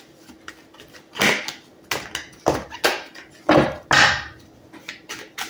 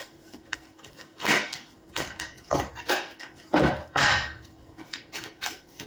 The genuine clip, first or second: first